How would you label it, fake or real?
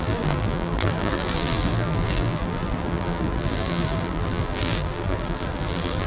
fake